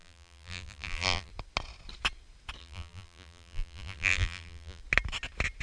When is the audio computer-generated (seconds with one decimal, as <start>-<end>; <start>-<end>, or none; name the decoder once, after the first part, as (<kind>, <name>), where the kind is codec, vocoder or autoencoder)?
0.0-1.3 (vocoder, BigVGAN v2); 2.6-4.8